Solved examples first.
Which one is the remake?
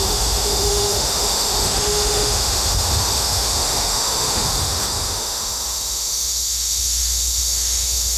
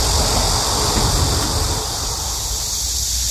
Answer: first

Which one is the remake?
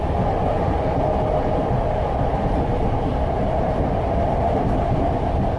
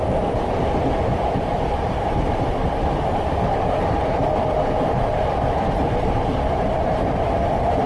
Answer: second